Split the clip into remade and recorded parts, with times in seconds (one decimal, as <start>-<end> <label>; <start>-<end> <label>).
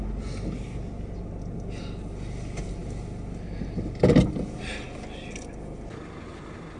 0.0-6.8 recorded